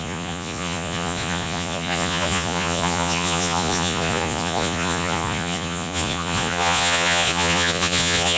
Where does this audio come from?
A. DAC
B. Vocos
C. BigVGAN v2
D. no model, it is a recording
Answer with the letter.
B